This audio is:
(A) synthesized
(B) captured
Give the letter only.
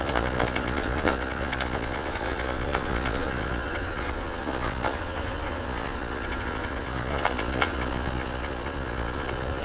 A